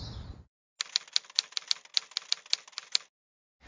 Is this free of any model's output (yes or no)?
yes